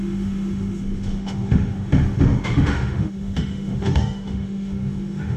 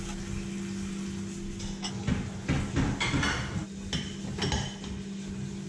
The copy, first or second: first